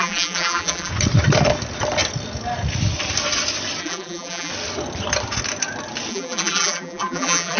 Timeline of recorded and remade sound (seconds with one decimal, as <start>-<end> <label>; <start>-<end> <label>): 0.0-0.9 remade; 0.9-3.8 recorded; 3.8-4.5 remade; 4.5-6.1 recorded; 6.1-7.6 remade